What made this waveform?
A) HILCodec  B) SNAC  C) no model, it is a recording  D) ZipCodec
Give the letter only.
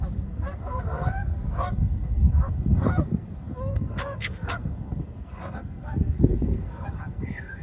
B